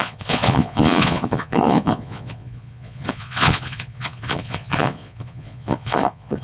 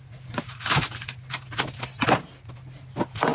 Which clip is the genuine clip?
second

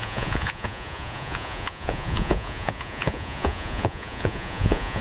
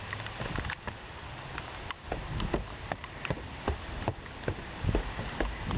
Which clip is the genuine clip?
second